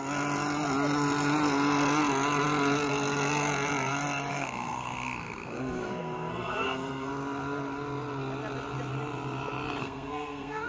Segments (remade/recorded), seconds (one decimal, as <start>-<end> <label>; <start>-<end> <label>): 0.0-4.3 recorded; 4.3-7.1 remade; 7.1-9.8 recorded; 9.8-10.7 remade